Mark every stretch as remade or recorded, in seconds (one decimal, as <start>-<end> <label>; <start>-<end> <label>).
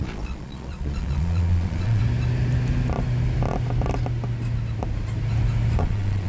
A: 0.0-2.0 remade; 2.0-5.8 recorded; 5.8-6.3 remade